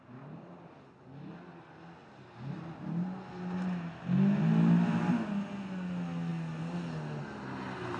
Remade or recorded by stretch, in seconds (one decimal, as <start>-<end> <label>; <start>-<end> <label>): 0.0-8.0 recorded